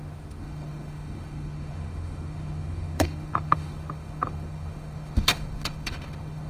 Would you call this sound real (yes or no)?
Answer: no